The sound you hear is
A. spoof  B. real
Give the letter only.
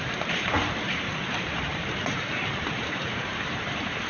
A